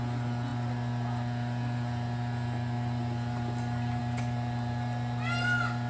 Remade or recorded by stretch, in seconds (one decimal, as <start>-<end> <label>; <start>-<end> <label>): 0.0-5.9 recorded